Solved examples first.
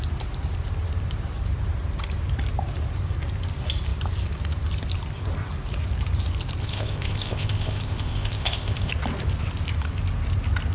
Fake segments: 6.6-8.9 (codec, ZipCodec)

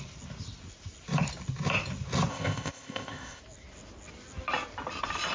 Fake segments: 2.3-3.4 (codec, ZipCodec)